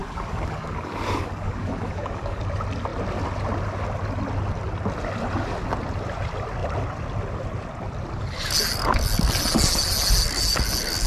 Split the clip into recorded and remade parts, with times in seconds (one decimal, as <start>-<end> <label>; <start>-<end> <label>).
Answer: 0.0-2.4 remade; 2.4-11.1 recorded